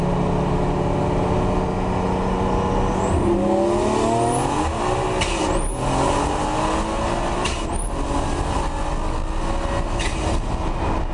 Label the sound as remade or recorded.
recorded